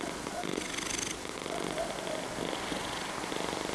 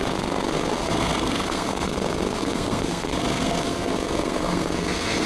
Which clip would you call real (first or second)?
first